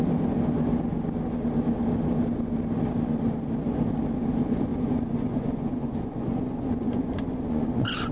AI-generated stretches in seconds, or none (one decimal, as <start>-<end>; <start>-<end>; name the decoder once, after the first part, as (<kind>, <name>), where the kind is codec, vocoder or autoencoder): 4.7-8.1 (vocoder, Vocos)